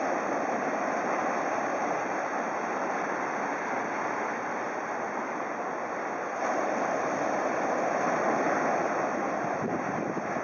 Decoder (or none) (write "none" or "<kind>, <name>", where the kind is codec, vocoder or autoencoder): vocoder, BigVGAN v2